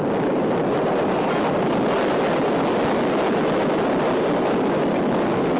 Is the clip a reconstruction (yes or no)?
no